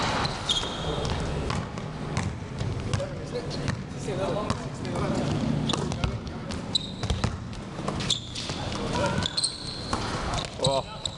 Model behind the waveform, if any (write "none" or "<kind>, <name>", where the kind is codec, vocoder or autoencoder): none